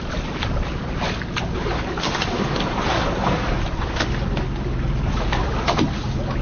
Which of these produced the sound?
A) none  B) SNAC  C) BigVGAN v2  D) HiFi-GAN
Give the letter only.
A